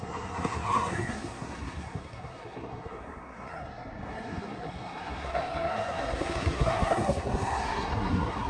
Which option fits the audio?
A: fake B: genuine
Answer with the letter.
A